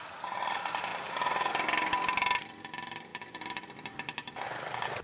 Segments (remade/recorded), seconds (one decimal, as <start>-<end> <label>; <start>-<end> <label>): 0.0-5.0 remade